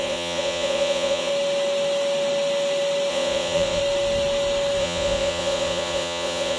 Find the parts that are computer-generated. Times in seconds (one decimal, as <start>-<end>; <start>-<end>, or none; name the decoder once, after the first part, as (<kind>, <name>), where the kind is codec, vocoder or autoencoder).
0.0-1.3 (vocoder, Vocos); 3.1-3.8; 4.8-6.6